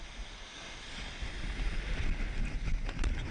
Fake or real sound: real